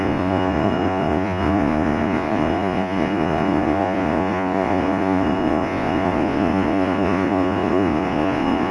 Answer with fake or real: fake